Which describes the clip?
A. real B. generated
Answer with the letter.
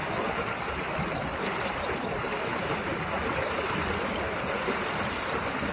A